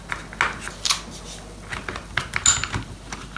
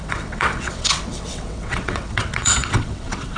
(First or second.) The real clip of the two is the first